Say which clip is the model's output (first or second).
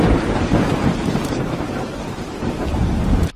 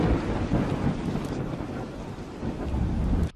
first